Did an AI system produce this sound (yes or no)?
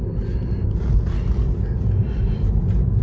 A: no